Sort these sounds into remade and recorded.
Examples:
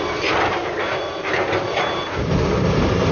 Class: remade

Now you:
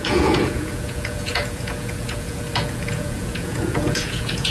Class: remade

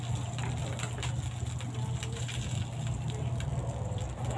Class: recorded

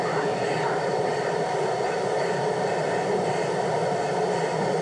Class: recorded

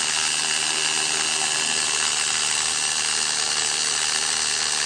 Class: recorded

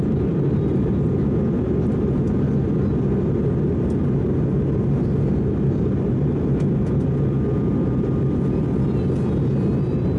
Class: recorded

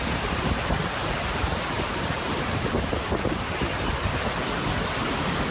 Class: recorded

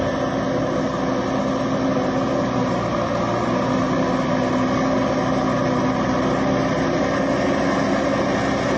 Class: recorded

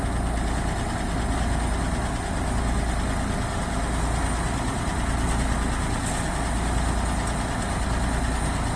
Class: recorded